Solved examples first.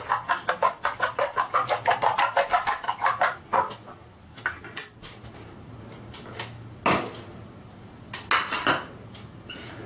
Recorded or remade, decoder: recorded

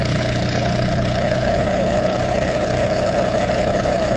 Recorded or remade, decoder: remade, codec, HILCodec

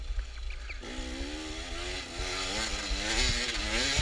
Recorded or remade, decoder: recorded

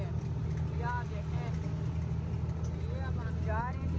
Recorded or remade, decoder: recorded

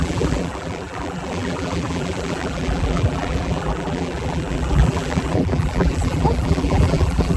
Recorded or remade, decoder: remade, vocoder, BigVGAN v2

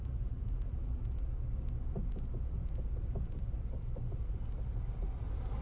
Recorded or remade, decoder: recorded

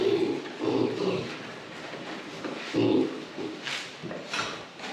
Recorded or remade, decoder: recorded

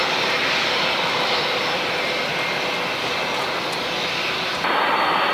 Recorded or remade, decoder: recorded